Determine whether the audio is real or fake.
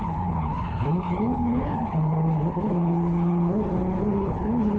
fake